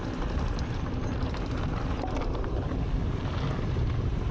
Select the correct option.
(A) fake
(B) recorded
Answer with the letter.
B